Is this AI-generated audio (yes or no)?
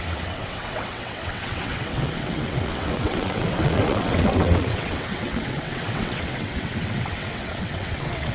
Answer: yes